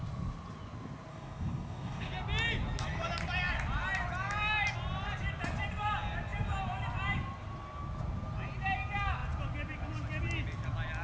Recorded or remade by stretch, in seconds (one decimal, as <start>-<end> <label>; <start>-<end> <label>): 0.0-1.1 recorded; 1.1-2.1 remade; 2.1-11.0 recorded